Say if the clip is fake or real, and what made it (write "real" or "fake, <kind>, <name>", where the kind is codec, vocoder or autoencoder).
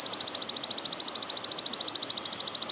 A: real